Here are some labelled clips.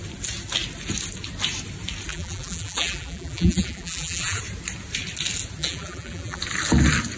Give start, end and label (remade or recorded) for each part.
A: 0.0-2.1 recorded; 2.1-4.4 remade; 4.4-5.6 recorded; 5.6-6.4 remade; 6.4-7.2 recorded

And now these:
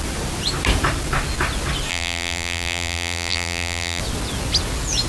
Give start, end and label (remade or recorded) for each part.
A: 0.0-1.9 recorded; 1.9-4.0 remade; 4.0-5.1 recorded

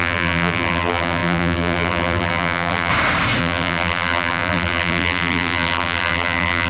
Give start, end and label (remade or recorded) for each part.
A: 0.0-2.9 remade; 2.9-3.4 recorded; 3.4-6.7 remade

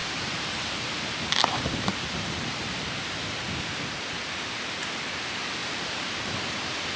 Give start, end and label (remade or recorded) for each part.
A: 0.0-2.8 remade; 2.8-5.6 recorded; 5.6-6.3 remade; 6.3-7.0 recorded

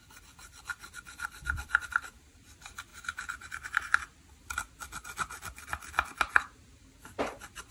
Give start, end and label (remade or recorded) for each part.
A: 0.0-2.9 remade; 2.9-7.2 recorded; 7.2-7.7 remade

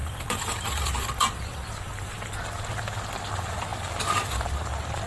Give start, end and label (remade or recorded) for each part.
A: 0.0-2.1 remade; 2.1-5.1 recorded

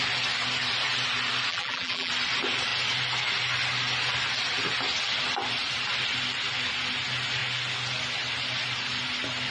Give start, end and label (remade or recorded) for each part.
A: 0.0-1.5 recorded; 1.5-2.1 remade; 2.1-9.5 recorded